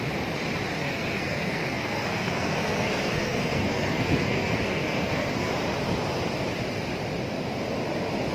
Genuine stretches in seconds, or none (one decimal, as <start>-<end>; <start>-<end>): 0.0-0.8; 5.5-8.3